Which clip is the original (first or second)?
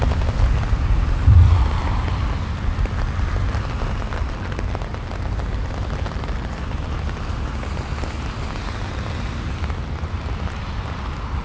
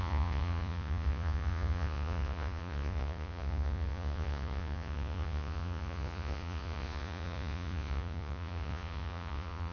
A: first